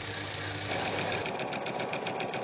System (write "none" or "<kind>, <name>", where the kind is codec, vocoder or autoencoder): none